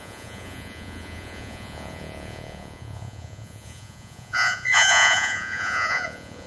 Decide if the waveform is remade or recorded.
remade